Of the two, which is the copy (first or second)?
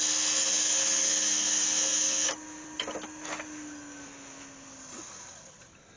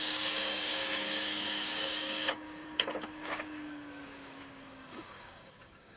second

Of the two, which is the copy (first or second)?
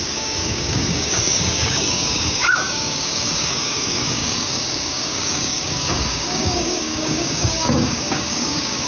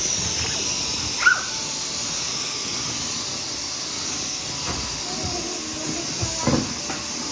first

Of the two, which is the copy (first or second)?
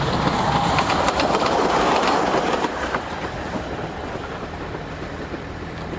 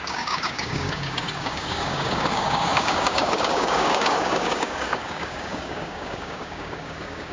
second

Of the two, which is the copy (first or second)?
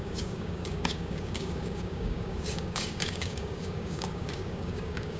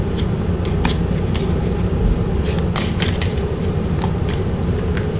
first